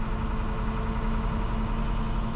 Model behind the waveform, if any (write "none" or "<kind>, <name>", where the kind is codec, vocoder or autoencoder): none